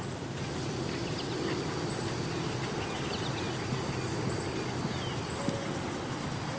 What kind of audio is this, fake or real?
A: real